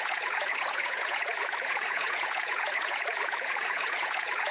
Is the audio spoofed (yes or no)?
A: yes